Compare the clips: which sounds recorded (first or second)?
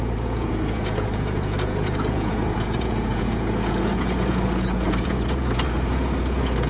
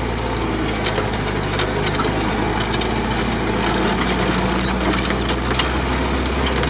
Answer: second